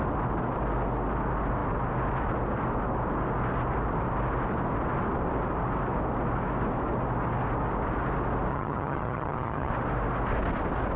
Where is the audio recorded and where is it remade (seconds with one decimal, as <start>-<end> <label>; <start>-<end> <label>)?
0.0-8.5 recorded; 8.5-9.7 remade; 9.7-11.0 recorded